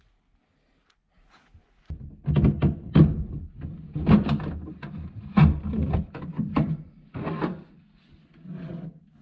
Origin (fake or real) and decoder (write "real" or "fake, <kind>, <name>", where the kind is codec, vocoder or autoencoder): real